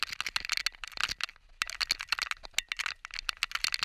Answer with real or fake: real